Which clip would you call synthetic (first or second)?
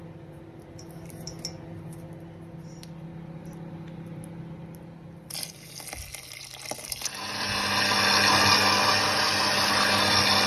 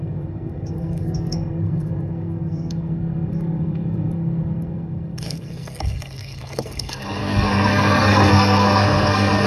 second